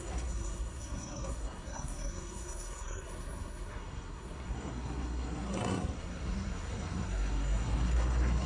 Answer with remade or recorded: remade